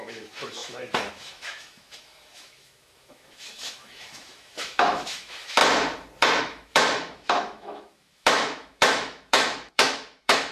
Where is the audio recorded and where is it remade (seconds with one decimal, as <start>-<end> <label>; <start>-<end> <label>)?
0.0-5.6 remade; 5.6-6.4 recorded; 6.4-10.5 remade